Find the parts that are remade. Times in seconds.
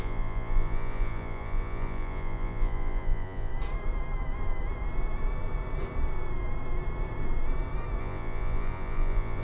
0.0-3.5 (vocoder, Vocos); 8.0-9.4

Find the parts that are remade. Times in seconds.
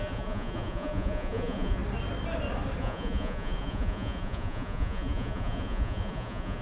0.0-1.8 (vocoder, Vocos); 2.8-6.6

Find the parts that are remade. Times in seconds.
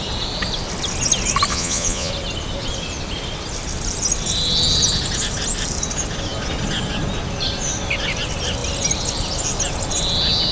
1.5-2.1 (vocoder, Vocos)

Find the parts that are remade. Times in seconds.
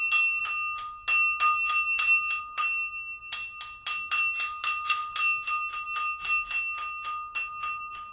none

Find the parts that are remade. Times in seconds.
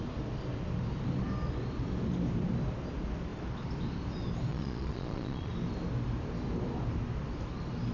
4.5-5.5 (vocoder, Vocos)